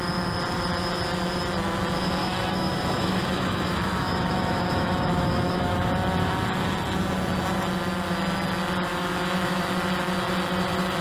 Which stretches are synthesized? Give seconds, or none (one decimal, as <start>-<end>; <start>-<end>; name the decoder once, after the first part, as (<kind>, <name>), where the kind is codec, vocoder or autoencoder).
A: 2.2-5.9 (autoencoder, DAC-VAE); 8.9-9.7